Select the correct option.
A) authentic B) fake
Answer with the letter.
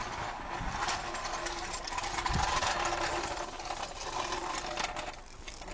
A